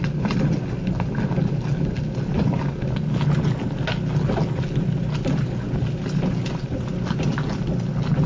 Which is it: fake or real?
real